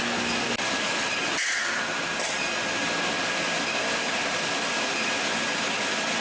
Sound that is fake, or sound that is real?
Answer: real